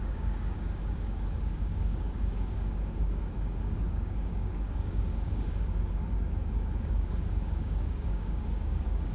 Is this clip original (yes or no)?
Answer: no